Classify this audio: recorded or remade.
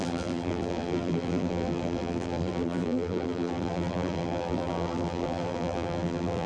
remade